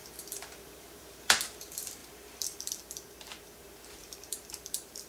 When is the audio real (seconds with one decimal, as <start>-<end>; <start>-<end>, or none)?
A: none